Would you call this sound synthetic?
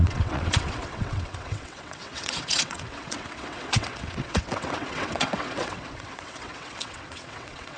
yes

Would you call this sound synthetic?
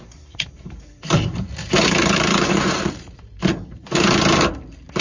yes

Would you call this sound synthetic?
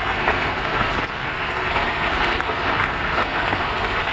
yes